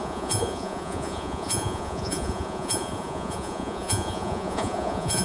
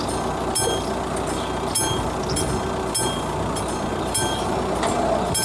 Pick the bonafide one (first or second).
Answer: second